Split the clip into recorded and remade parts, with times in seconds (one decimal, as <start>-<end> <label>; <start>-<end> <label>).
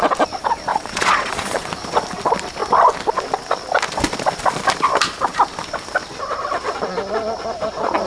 0.0-0.7 recorded; 0.7-1.7 remade; 1.7-8.1 recorded